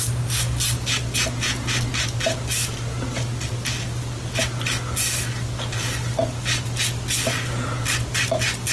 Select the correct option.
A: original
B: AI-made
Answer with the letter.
A